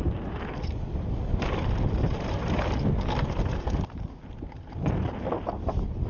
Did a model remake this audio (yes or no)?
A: no